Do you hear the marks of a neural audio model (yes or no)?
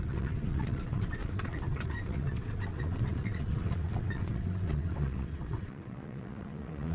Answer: yes